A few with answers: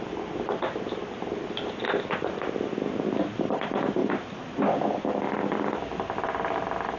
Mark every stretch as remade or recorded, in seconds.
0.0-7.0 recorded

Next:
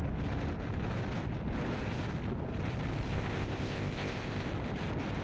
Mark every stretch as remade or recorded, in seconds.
0.0-3.1 recorded; 3.1-4.5 remade; 4.5-5.2 recorded

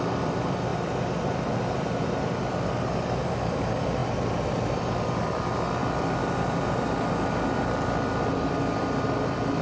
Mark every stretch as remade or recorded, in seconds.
0.0-9.6 recorded

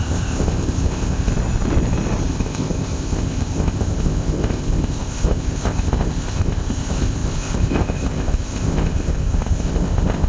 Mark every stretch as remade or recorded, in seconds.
0.0-1.3 remade; 1.3-2.3 recorded; 2.3-10.3 remade